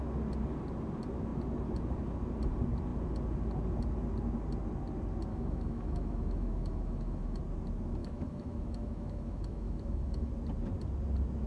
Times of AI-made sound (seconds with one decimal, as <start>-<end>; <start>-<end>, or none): 5.3-7.4; 8.0-10.3